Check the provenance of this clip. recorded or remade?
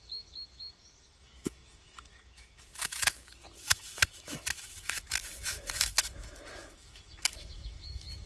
remade